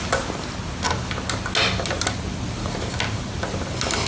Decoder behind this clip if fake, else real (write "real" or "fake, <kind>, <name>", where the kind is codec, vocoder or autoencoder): real